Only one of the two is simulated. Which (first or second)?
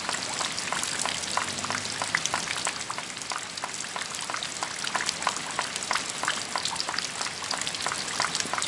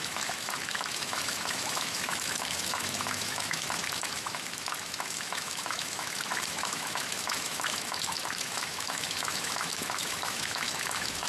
second